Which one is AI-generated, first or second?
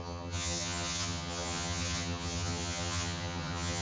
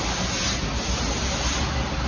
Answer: first